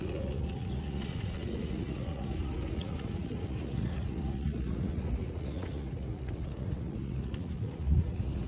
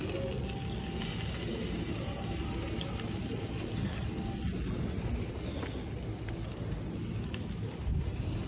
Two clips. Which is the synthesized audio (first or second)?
first